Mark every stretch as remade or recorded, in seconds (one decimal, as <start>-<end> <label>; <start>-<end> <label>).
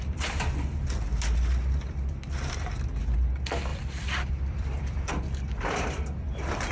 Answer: 0.0-3.7 recorded; 3.7-5.1 remade; 5.1-6.7 recorded